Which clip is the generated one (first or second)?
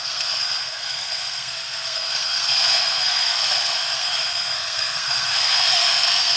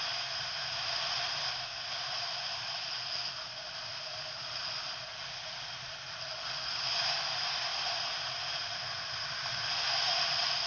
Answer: first